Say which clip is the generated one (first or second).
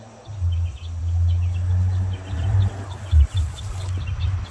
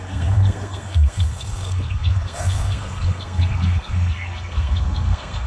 second